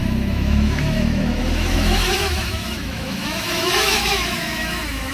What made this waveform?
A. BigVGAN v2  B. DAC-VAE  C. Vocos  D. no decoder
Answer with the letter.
B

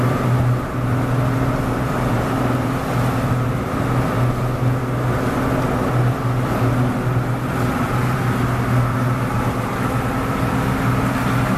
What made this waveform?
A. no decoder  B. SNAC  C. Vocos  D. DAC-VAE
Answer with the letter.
A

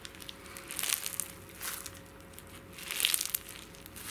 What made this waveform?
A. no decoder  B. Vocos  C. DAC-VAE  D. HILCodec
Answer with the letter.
A